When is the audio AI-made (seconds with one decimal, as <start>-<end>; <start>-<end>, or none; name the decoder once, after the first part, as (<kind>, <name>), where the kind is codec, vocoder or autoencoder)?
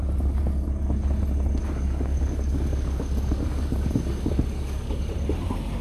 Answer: 1.6-5.1 (codec, DAC)